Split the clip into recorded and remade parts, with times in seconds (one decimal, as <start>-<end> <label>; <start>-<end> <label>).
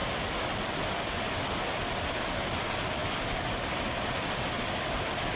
0.0-5.4 recorded